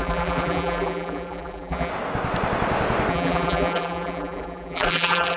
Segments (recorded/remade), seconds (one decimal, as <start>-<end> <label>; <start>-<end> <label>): 0.0-1.9 remade; 1.9-3.1 recorded; 3.1-5.4 remade